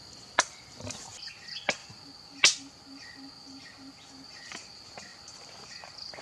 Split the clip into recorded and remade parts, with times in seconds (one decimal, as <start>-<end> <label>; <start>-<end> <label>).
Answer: 0.0-6.2 remade